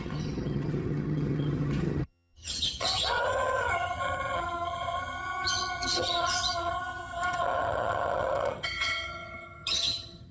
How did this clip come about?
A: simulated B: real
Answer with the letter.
A